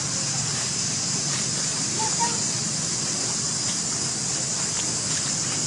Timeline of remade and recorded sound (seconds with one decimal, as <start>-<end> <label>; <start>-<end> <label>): 0.0-0.5 recorded; 0.5-3.9 remade; 3.9-4.3 recorded; 4.3-4.8 remade; 4.8-5.7 recorded

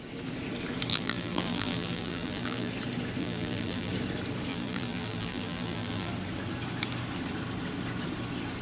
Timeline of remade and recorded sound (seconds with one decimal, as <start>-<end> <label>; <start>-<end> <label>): 0.0-0.9 recorded; 0.9-2.7 remade; 2.7-3.2 recorded; 3.2-3.9 remade; 3.9-4.5 recorded; 4.5-6.1 remade; 6.1-8.6 recorded

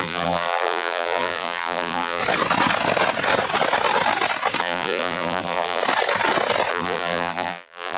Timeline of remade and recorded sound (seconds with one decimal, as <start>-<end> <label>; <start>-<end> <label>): 0.0-2.2 remade; 2.2-4.6 recorded; 4.6-5.8 remade; 5.8-6.7 recorded; 6.7-8.0 remade

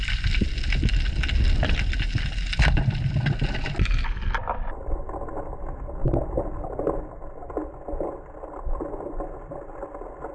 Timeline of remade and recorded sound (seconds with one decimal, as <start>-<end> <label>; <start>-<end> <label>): 0.0-10.3 recorded

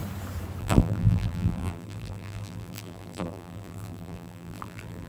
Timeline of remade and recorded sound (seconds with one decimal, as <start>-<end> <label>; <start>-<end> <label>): 0.0-0.6 recorded; 0.6-5.1 remade